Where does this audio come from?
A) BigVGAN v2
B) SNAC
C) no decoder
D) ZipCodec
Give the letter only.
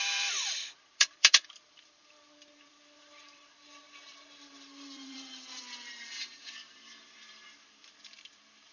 A